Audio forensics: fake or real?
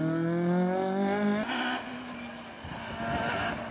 real